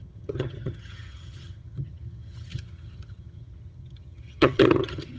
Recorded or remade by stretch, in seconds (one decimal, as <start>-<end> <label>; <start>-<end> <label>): 0.0-5.2 remade